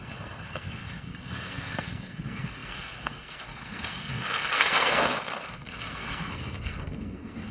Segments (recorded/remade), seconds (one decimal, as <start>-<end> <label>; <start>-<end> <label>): 0.0-7.5 remade